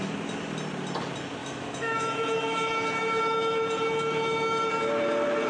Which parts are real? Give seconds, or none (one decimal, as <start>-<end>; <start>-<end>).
0.0-1.4; 4.7-5.5

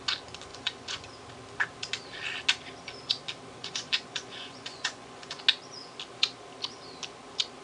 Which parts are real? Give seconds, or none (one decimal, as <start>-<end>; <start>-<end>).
0.0-0.5; 1.1-3.6; 5.4-7.6

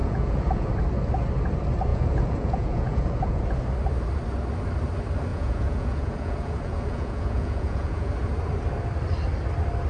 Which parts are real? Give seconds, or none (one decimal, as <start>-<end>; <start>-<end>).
0.7-1.9; 3.4-5.3; 8.1-9.9

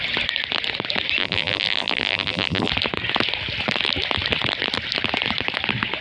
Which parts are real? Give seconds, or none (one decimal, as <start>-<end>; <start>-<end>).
0.0-1.2; 2.7-6.0

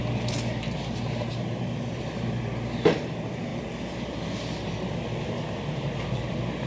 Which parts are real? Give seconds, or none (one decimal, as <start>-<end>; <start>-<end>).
0.0-6.7

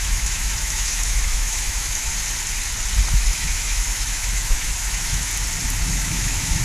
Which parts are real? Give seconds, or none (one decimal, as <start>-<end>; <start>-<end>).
2.1-3.1; 5.3-5.9

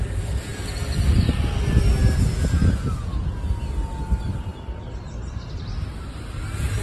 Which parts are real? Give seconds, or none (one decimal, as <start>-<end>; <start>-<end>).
0.0-4.5; 5.5-6.8